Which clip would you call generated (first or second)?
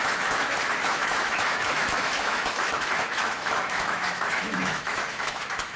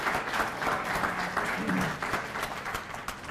first